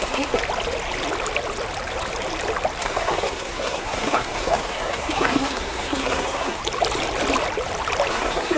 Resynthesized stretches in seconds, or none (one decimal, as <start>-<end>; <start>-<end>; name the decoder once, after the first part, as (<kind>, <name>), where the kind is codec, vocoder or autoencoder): 0.0-0.4 (codec, SNAC); 2.8-6.6; 8.1-8.6